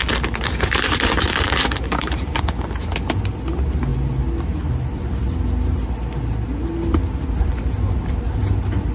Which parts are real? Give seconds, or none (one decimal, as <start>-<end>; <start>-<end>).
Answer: 2.3-8.9